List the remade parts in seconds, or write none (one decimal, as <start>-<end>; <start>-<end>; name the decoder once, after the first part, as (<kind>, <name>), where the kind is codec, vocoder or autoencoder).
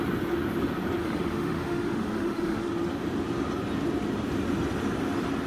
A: 1.0-2.7 (autoencoder, DAC-VAE)